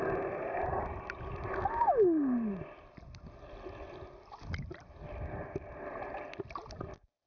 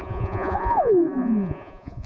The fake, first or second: second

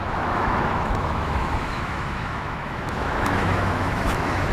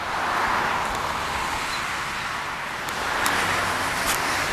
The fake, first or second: first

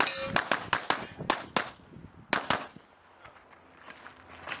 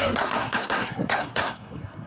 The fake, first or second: second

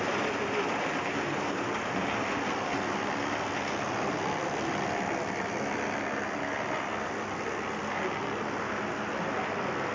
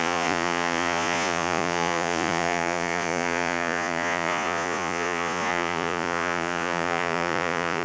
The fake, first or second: second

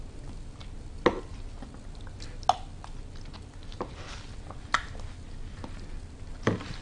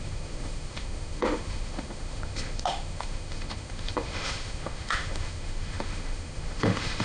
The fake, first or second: second